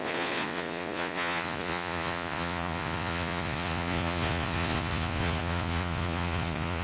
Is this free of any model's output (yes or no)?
no